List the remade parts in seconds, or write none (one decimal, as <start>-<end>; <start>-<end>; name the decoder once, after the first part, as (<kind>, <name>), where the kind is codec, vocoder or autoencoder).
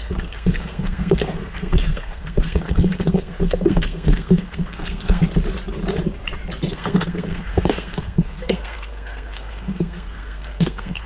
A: 0.0-5.2 (codec, SNAC); 6.7-11.1